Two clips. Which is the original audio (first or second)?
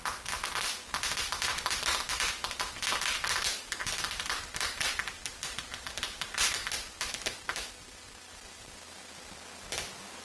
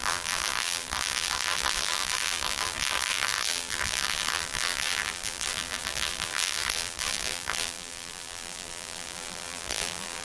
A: first